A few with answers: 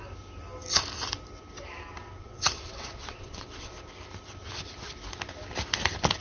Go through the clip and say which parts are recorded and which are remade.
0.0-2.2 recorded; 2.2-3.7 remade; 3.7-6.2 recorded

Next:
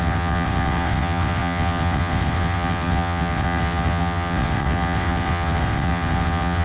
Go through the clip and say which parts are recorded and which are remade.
0.0-6.6 remade

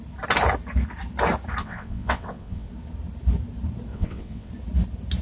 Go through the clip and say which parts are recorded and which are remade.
0.0-1.6 recorded; 1.6-2.7 remade; 2.7-3.9 recorded; 3.9-4.5 remade; 4.5-5.2 recorded

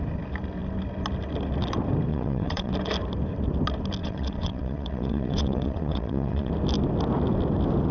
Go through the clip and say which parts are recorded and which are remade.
0.0-2.1 recorded; 2.1-2.7 remade; 2.7-4.0 recorded; 4.0-6.5 remade; 6.5-7.9 recorded